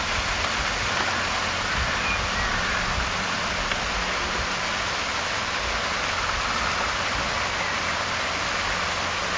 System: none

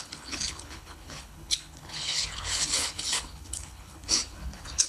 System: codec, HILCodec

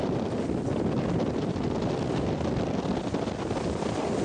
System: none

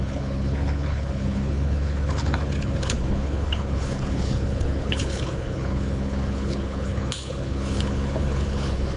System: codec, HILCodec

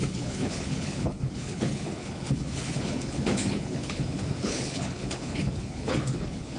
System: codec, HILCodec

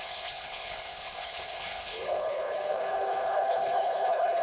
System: codec, HILCodec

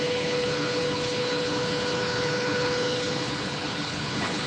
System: codec, HILCodec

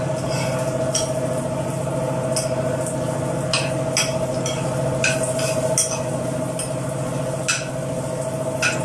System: none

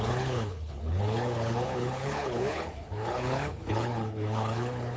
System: codec, HILCodec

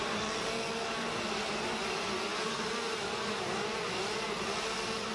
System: none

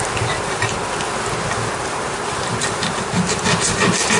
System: none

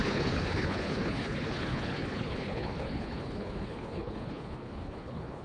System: codec, HILCodec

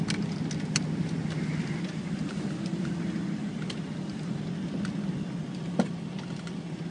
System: none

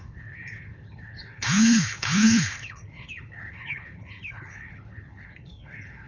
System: codec, HILCodec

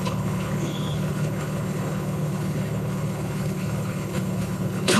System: codec, HILCodec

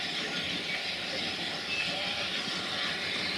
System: none